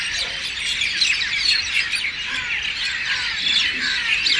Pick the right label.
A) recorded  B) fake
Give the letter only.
A